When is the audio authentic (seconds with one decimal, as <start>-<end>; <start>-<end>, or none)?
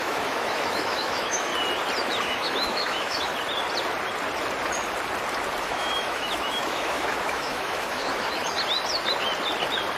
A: 1.5-2.2; 3.3-5.6; 8.4-10.0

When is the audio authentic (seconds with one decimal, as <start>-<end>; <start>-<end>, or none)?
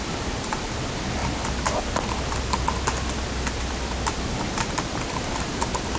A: 0.0-6.0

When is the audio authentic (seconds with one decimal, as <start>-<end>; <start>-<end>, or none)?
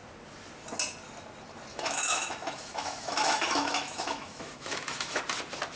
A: 0.0-1.7; 5.2-5.8